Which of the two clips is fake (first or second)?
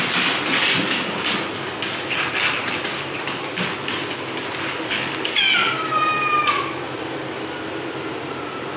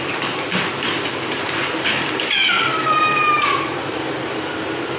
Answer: second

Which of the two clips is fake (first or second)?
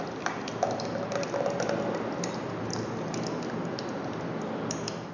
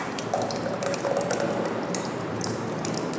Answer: second